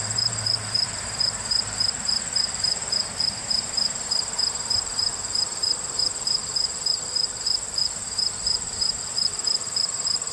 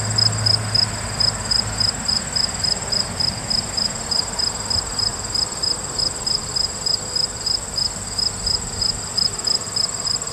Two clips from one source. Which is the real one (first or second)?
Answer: second